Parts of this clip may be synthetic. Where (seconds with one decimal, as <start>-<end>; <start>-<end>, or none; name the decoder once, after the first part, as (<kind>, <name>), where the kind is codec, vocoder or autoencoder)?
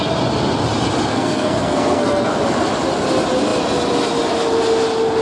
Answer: 1.1-2.4 (codec, SNAC)